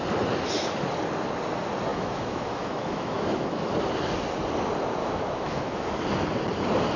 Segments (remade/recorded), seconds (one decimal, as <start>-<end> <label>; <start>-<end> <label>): 0.0-1.9 recorded; 1.9-3.7 remade; 3.7-5.0 recorded; 5.0-6.0 remade; 6.0-7.0 recorded

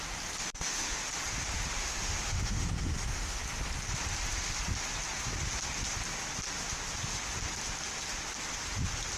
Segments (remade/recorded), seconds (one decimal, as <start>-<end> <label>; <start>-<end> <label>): 0.0-0.4 recorded; 0.4-1.0 remade; 1.0-1.8 recorded; 1.8-3.4 remade; 3.4-9.2 recorded

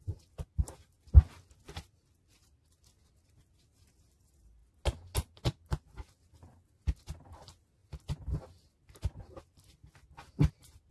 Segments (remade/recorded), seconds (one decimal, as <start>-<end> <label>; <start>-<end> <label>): 0.0-10.9 recorded

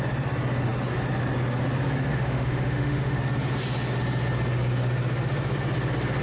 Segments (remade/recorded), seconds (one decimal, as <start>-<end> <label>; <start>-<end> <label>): 0.0-2.1 recorded; 2.1-3.2 remade; 3.2-6.2 recorded

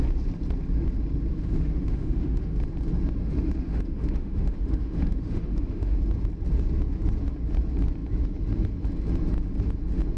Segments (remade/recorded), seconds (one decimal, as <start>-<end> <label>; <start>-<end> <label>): 0.0-1.3 recorded; 1.3-2.6 remade; 2.6-3.2 recorded; 3.2-6.0 remade; 6.0-10.2 recorded

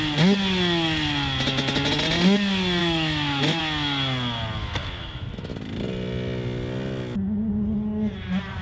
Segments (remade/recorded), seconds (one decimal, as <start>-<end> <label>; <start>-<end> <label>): 0.0-2.8 recorded; 2.8-3.6 remade; 3.6-4.6 recorded; 4.6-5.5 remade; 5.5-8.6 recorded

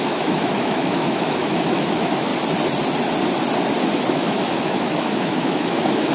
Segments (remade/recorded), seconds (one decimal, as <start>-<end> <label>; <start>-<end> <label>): 0.0-2.3 remade; 2.3-4.1 recorded; 4.1-6.1 remade